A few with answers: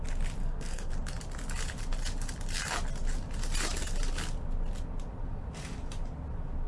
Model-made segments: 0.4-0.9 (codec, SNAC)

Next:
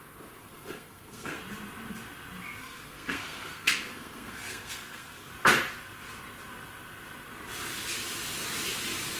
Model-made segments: 0.4-1.4 (codec, SNAC); 2.6-5.3

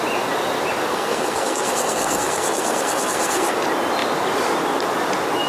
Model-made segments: 0.9-3.6 (codec, SNAC)

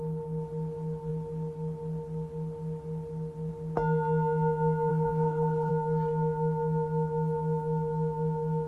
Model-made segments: 4.9-5.7 (codec, SNAC)

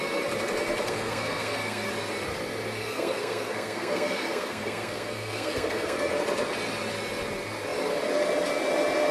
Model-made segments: 0.8-1.9 (codec, SNAC); 2.8-6.2

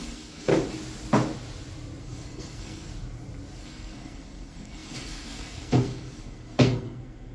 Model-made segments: 0.0-0.5 (codec, SNAC); 2.0-2.9; 3.6-7.3

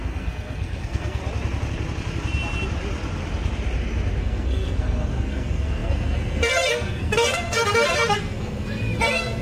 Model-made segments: 0.0-1.2 (codec, SNAC); 4.2-9.4